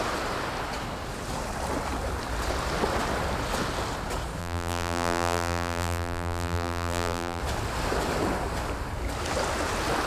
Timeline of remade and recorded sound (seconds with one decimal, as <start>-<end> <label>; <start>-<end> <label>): 0.0-4.4 recorded; 4.4-7.4 remade; 7.4-10.1 recorded